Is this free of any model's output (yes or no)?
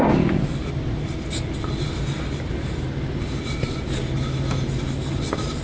yes